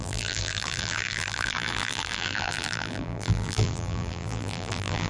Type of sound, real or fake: fake